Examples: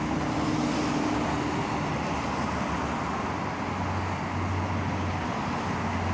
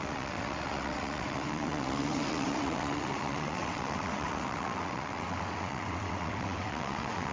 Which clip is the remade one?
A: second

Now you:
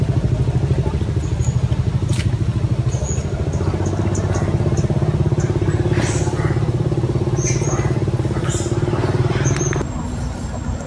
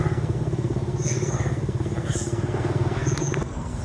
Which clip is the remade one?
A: second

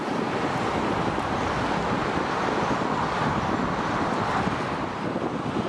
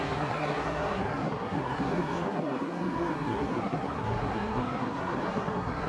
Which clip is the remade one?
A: second